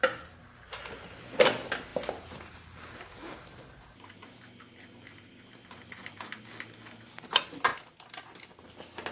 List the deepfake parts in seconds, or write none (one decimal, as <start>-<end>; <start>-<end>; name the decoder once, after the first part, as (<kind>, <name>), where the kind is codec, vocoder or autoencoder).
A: none